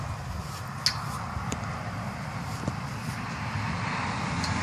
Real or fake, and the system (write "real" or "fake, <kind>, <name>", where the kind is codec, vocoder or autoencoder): real